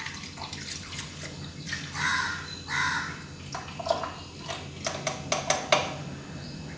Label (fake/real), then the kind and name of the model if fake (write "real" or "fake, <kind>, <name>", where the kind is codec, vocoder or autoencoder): real